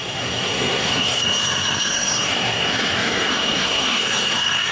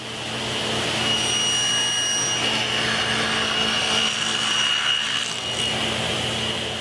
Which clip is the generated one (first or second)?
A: first